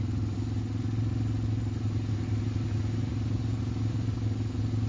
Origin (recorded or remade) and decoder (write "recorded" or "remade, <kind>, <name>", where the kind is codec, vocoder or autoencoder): recorded